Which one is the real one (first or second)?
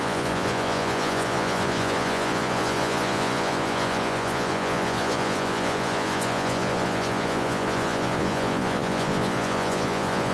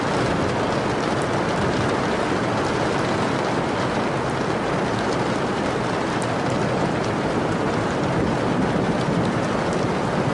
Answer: second